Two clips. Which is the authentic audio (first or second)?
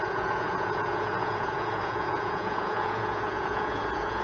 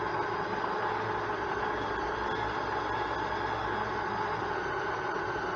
second